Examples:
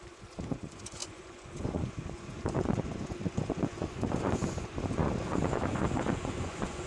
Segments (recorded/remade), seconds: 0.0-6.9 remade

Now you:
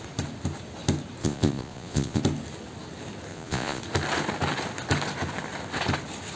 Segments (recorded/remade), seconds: 0.0-1.2 recorded; 1.2-2.2 remade; 2.2-3.3 recorded; 3.3-3.8 remade; 3.8-6.4 recorded

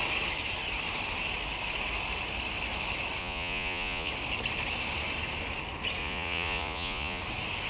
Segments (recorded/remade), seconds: 0.0-3.2 recorded; 3.2-4.1 remade; 4.1-6.0 recorded; 6.0-7.2 remade; 7.2-7.7 recorded

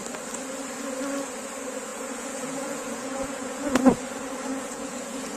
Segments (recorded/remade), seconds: 0.0-1.9 recorded; 1.9-3.8 remade; 3.8-4.5 recorded; 4.5-5.4 remade

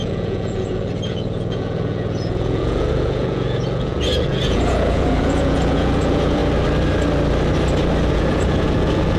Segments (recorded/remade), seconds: 0.0-6.4 remade; 6.4-8.1 recorded; 8.1-9.2 remade

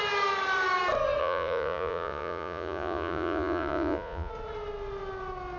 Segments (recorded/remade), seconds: 0.0-1.2 recorded; 1.2-4.3 remade; 4.3-5.6 recorded

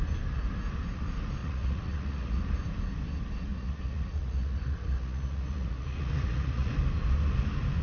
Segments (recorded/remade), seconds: 0.0-1.4 recorded; 1.4-2.4 remade; 2.4-3.5 recorded; 3.5-6.7 remade; 6.7-7.8 recorded